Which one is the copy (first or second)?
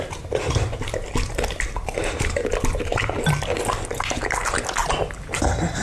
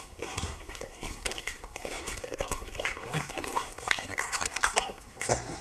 second